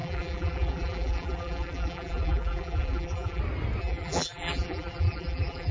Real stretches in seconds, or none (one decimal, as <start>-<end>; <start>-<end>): 3.4-3.8